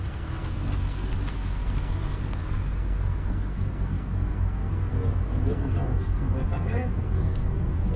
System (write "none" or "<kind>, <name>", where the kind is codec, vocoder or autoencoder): codec, SNAC